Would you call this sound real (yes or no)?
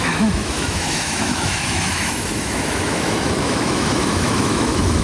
no